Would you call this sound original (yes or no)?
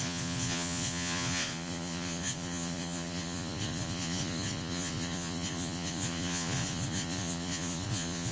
no